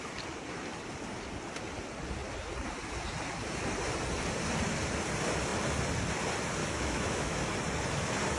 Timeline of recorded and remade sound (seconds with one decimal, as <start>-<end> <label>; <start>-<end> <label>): 0.0-6.6 recorded; 6.6-7.4 remade; 7.4-8.4 recorded